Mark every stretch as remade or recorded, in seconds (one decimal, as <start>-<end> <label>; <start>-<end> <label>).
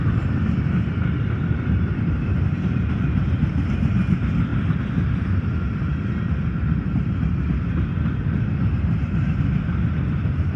0.0-10.6 recorded